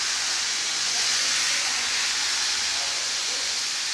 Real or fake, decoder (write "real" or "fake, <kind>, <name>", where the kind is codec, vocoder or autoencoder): fake, vocoder, Vocos